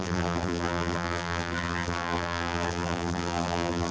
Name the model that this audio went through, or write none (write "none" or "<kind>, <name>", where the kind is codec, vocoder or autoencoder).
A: vocoder, BigVGAN v2